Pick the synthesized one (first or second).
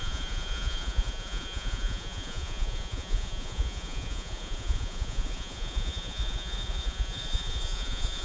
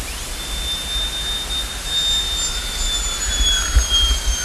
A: first